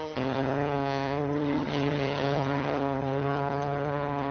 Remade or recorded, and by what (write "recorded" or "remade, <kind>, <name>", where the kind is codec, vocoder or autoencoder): remade, vocoder, HiFi-GAN